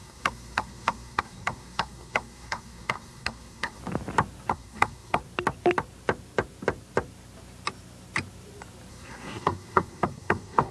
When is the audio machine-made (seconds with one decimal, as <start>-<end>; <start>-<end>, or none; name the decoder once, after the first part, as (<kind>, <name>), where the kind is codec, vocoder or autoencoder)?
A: 0.0-3.8 (codec, SNAC); 4.5-5.2; 8.9-10.7